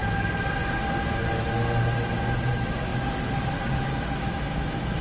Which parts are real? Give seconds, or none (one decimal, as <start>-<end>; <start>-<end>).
0.0-2.5; 2.9-3.8